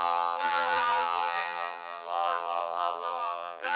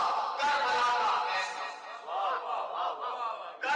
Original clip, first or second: second